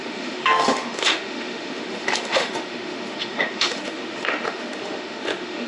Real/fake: fake